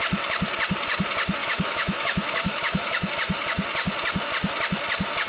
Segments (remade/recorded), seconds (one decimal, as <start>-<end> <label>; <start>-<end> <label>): 0.0-1.4 recorded; 1.4-3.1 remade; 3.1-5.3 recorded